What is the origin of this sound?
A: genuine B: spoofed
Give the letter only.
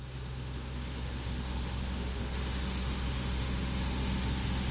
B